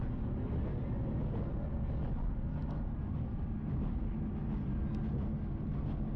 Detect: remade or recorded recorded